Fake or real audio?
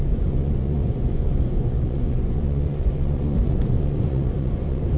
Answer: fake